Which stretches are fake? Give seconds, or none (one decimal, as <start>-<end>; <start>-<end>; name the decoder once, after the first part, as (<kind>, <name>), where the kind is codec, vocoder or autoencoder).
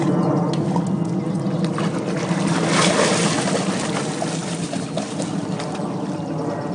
none